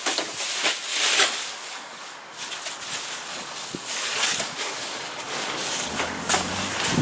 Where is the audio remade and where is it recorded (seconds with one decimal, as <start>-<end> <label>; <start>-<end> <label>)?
0.0-0.9 recorded; 0.9-2.5 remade; 2.5-3.3 recorded; 3.3-6.5 remade; 6.5-7.0 recorded